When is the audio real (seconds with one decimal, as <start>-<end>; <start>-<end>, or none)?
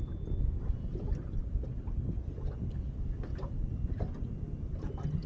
0.0-3.3; 3.9-5.3